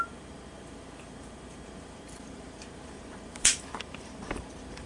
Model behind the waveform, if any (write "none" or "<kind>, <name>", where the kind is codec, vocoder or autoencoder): vocoder, BigVGAN v2